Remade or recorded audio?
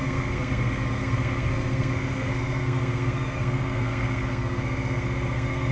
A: remade